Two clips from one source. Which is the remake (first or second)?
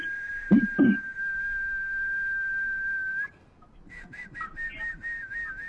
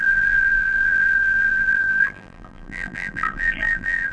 second